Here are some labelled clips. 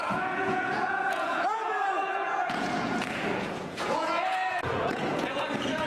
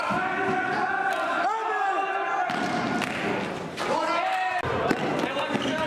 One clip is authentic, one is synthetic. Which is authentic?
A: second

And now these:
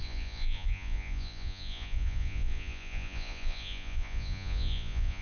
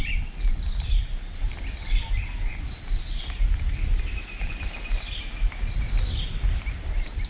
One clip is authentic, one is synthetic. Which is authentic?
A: second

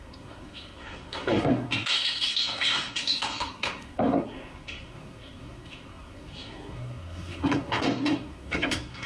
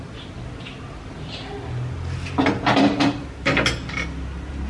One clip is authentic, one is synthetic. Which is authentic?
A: second